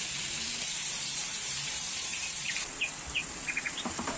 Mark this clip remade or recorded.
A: remade